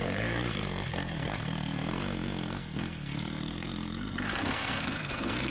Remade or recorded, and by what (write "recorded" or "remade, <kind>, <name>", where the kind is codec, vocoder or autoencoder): remade, codec, SNAC